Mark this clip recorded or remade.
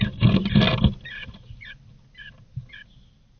recorded